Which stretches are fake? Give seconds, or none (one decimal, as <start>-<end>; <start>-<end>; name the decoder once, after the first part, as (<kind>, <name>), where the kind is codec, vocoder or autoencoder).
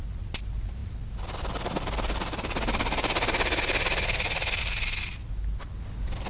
none